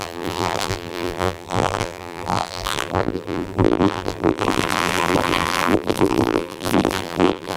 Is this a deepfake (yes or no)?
yes